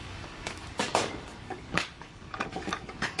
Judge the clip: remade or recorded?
remade